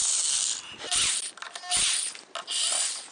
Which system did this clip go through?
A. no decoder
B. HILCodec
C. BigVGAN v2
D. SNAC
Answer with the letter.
A